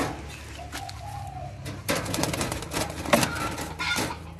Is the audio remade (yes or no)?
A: no